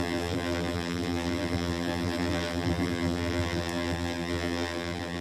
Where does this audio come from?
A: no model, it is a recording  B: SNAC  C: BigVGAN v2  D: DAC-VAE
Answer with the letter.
C